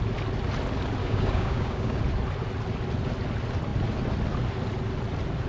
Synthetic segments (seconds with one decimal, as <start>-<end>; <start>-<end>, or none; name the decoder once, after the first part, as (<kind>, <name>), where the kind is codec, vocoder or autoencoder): 1.0-2.0 (codec, DAC)